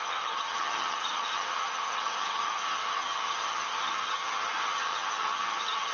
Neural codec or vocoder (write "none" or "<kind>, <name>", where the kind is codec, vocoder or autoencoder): vocoder, HiFi-GAN